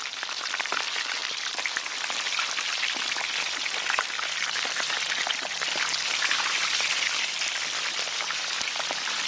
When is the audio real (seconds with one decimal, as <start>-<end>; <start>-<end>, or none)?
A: 0.0-9.3